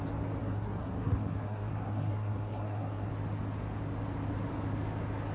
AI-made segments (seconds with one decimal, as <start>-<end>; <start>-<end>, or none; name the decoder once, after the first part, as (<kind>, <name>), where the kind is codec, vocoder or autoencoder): 0.4-3.1 (codec, SNAC)